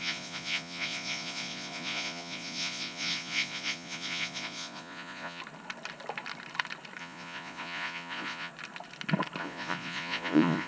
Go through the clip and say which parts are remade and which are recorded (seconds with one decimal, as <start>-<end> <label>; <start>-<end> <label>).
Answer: 0.0-5.4 remade; 5.4-7.0 recorded; 7.0-8.5 remade; 8.5-9.4 recorded; 9.4-10.7 remade